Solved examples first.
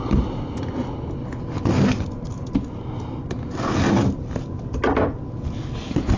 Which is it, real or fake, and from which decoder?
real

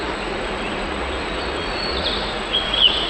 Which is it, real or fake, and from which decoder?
fake, vocoder, Vocos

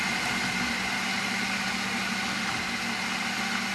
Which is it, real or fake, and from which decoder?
real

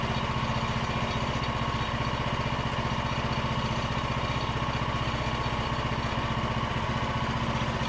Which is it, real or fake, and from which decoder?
real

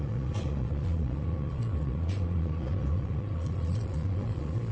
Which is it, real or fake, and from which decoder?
fake, vocoder, Vocos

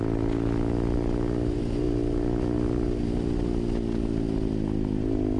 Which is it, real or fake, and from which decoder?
real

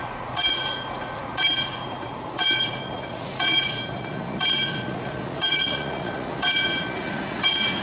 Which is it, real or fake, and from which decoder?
fake, vocoder, Vocos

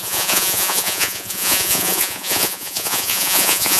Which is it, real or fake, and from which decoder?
fake, vocoder, Vocos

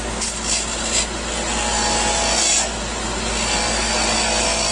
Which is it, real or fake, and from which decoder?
real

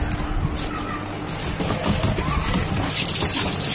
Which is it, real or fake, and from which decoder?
real